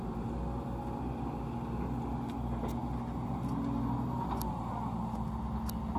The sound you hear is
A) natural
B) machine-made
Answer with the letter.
A